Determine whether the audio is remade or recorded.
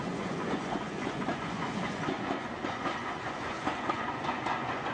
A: remade